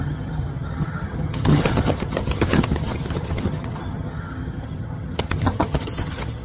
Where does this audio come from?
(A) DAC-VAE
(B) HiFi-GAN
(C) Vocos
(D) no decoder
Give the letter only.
B